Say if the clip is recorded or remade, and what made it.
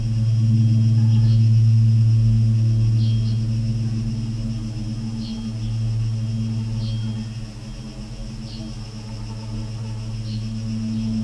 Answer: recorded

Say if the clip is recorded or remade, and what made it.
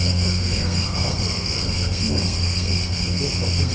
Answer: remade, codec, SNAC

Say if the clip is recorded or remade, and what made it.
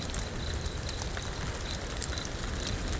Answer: recorded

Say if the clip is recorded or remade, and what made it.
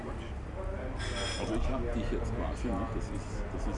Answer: recorded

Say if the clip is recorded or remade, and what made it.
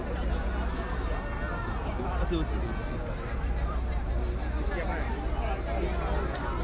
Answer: recorded